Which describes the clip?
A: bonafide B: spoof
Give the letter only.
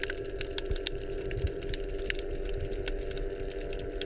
A